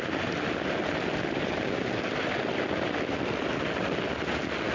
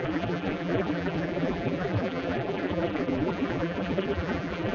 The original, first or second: first